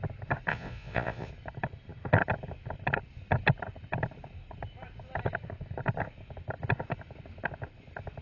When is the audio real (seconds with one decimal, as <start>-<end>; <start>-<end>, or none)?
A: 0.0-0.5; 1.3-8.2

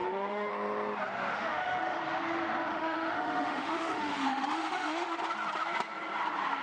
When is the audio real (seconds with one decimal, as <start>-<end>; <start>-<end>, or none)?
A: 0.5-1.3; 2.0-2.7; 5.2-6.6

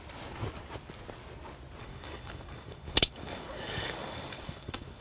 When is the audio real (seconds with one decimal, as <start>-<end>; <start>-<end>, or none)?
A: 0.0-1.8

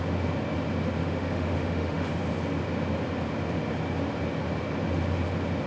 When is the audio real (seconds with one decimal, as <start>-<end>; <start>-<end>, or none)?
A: 0.0-1.0; 2.1-5.7

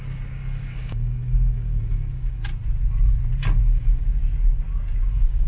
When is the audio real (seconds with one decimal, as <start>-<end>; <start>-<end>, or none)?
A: 2.5-3.6; 4.2-5.1

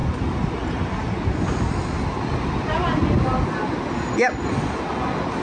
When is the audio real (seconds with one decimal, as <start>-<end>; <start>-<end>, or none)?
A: 1.3-5.4